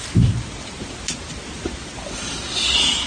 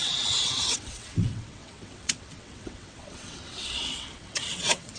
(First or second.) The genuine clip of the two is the first